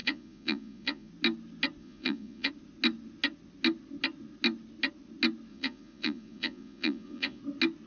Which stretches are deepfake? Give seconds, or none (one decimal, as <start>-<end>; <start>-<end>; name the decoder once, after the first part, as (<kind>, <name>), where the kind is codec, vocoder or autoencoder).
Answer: 0.0-1.1 (vocoder, Vocos); 1.8-2.5; 5.5-7.4